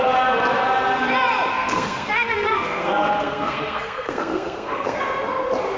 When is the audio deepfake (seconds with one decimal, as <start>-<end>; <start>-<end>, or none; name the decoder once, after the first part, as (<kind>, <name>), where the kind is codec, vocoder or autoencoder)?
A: 1.5-5.0 (codec, SNAC)